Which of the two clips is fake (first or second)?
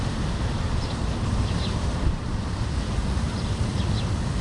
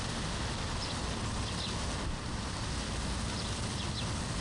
first